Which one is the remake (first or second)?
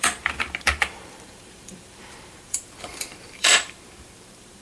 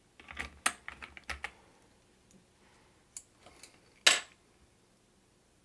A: first